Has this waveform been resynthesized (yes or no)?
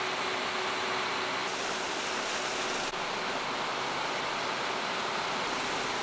no